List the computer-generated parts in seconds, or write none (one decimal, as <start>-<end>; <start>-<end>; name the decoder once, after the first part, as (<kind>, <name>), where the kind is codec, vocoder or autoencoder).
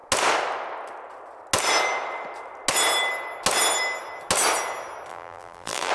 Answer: 5.1-5.9 (vocoder, BigVGAN v2)